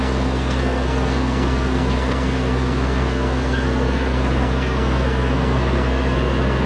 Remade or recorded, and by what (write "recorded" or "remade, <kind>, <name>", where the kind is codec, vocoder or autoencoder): remade, codec, SNAC